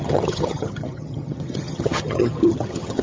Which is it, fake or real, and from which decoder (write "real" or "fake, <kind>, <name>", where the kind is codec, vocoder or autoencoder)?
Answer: fake, vocoder, HiFi-GAN